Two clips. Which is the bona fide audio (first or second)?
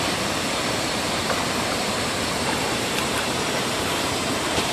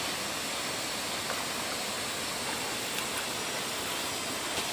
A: second